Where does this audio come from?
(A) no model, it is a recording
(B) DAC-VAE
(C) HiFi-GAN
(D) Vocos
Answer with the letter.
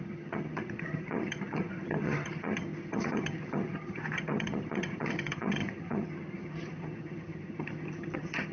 C